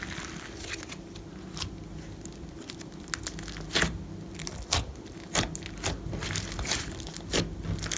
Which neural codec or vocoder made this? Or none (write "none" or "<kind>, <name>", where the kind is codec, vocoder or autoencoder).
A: none